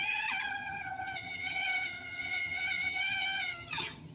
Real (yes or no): no